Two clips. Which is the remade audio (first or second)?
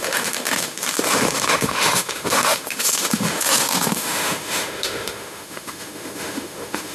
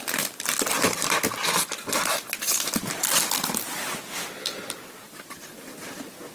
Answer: first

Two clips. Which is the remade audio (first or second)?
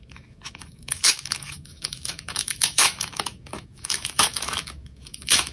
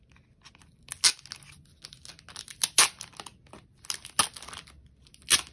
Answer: first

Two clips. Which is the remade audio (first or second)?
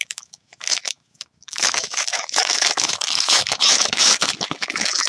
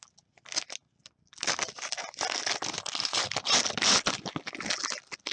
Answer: first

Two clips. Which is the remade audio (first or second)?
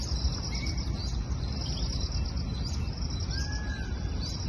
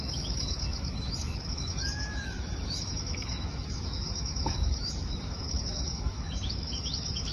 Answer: second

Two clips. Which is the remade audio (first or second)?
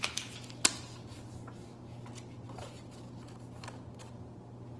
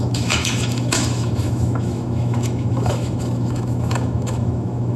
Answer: second